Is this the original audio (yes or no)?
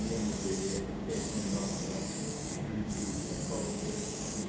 no